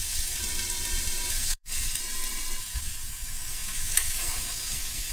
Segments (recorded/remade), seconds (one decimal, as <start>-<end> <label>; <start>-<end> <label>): 0.0-0.4 remade; 0.4-1.3 recorded; 1.3-2.0 remade; 2.0-2.6 recorded; 2.6-5.1 remade